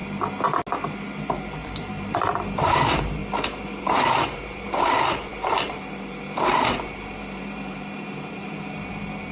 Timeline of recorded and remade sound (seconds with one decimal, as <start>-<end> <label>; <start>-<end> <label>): 0.0-1.2 recorded; 1.2-3.2 remade; 3.2-3.8 recorded; 3.8-9.3 remade